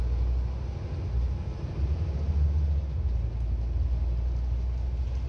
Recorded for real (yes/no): yes